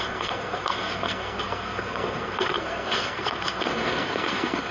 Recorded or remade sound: remade